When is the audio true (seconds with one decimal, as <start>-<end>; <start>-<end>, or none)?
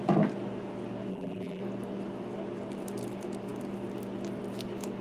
0.0-1.1; 1.6-5.0